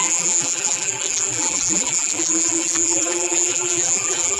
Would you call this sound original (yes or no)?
no